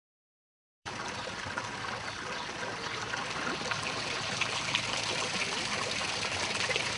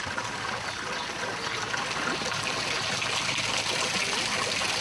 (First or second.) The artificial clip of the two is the first